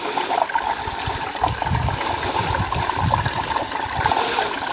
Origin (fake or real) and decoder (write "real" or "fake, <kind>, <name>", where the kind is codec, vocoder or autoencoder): real